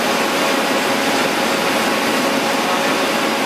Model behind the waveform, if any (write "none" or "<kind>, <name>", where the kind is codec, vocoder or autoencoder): none